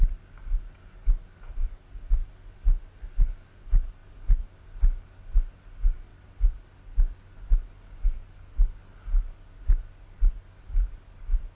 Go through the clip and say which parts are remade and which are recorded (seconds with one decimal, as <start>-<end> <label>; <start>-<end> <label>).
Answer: 0.0-11.5 recorded